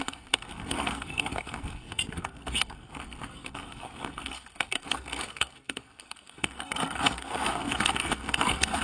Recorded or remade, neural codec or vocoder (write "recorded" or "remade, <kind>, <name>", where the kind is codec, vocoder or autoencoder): remade, codec, SNAC